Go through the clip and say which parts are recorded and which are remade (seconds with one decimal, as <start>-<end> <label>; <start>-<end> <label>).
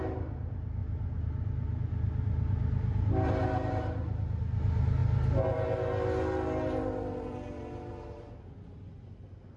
0.0-9.6 recorded